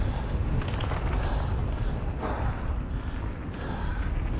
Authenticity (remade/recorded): recorded